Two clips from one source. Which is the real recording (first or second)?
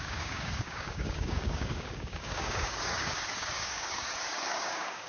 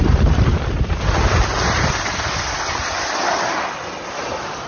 second